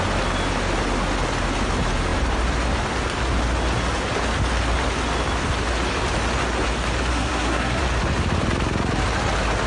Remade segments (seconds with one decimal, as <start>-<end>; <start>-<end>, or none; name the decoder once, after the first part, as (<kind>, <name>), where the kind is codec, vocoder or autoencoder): 7.1-7.8 (codec, SNAC)

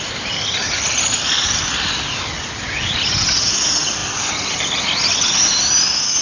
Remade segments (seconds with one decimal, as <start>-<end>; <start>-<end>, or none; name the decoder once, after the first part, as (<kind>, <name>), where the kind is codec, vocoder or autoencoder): none

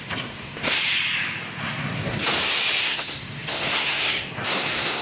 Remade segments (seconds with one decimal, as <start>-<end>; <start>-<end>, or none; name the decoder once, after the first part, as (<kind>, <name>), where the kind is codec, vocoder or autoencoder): 0.0-0.8 (codec, SNAC); 1.6-2.2; 2.8-5.0

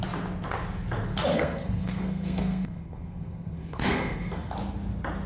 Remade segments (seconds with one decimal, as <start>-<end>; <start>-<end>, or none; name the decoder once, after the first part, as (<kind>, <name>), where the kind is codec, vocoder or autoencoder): 1.3-4.5 (codec, SNAC)

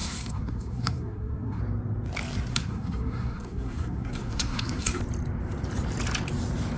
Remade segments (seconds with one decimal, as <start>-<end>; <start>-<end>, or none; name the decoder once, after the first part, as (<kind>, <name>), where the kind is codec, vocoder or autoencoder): 0.0-1.6 (codec, SNAC); 2.5-5.0

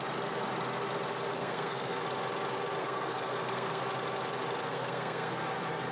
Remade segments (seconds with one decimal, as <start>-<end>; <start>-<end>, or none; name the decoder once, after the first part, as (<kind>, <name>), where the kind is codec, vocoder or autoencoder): 1.4-2.0 (codec, SNAC); 2.8-3.8; 4.6-5.3